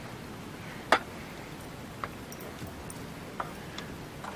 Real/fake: real